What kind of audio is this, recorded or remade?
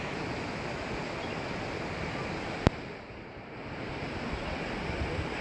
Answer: recorded